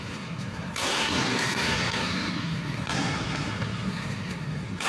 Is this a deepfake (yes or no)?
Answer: yes